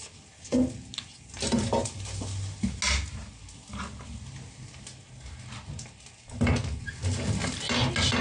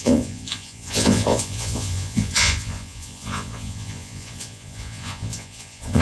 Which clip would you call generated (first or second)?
second